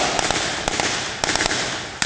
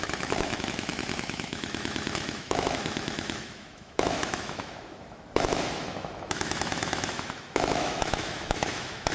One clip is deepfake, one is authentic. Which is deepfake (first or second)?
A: second